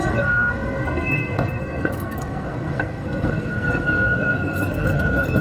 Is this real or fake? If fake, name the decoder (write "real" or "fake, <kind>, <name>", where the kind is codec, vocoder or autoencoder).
fake, codec, SNAC